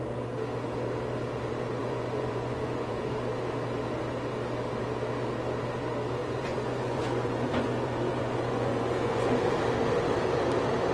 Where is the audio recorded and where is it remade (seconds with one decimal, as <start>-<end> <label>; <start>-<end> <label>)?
0.0-1.8 recorded; 1.8-3.1 remade; 3.1-6.2 recorded; 6.2-9.6 remade; 9.6-10.9 recorded